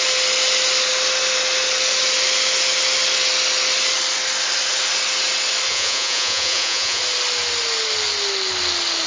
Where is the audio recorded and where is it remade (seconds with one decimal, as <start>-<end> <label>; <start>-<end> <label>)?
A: 0.0-5.7 recorded; 5.7-7.0 remade; 7.0-9.1 recorded